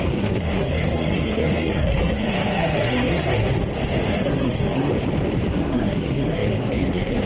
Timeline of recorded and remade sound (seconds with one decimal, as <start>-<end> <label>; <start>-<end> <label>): 0.0-3.6 remade; 3.6-4.1 recorded; 4.1-4.9 remade; 4.9-5.5 recorded; 5.5-7.2 remade